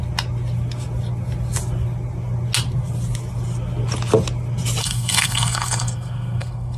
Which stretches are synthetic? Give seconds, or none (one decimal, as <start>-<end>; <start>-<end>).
4.8-6.8

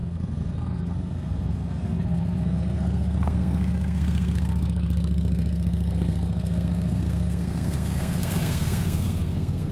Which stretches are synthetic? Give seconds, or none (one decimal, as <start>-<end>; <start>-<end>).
0.0-9.7

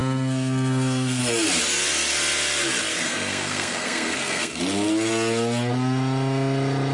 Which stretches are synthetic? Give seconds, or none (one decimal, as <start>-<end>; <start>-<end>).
0.0-1.2; 2.9-4.6

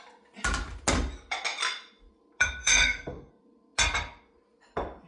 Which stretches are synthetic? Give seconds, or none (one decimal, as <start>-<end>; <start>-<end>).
2.6-3.3

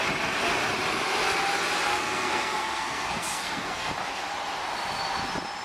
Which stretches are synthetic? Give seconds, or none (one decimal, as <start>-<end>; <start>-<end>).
1.9-3.9

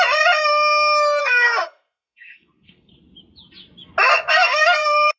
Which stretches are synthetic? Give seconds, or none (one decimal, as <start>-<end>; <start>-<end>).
1.2-2.9; 4.1-5.2